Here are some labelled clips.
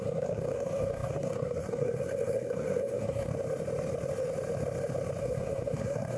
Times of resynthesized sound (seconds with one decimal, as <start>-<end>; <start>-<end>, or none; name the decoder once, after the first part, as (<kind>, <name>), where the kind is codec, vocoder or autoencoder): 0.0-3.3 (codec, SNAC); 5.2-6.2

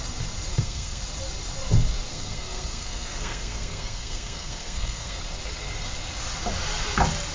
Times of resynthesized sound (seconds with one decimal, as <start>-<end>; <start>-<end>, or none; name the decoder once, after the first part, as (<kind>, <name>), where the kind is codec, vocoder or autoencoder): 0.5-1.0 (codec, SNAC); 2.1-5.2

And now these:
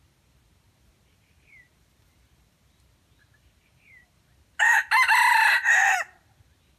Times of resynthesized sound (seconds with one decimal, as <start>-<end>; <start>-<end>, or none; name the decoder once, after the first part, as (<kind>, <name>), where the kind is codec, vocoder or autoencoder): none

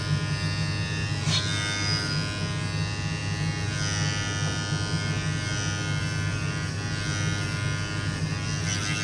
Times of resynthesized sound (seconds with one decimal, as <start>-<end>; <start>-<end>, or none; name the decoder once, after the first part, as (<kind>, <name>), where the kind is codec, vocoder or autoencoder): none